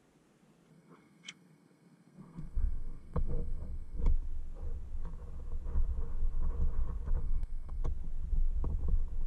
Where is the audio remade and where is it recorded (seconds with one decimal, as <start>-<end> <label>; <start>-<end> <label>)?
0.0-0.7 recorded; 0.7-4.0 remade; 4.0-7.2 recorded; 7.2-7.8 remade; 7.8-9.3 recorded